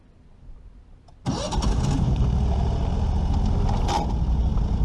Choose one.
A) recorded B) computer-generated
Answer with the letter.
A